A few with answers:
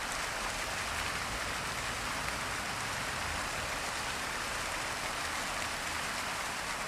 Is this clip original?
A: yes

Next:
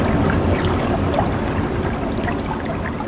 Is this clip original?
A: yes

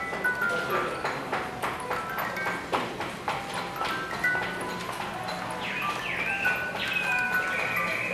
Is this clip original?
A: yes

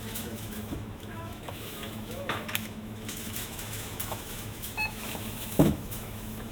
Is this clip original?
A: no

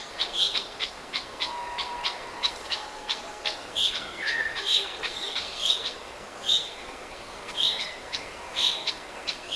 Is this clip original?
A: no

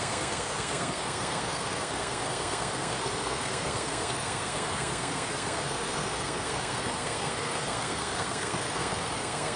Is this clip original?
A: no